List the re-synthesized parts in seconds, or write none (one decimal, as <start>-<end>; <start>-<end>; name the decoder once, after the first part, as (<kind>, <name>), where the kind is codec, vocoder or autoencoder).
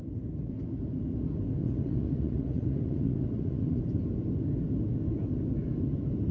1.6-3.8 (vocoder, Vocos)